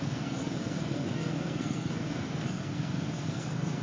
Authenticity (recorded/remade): remade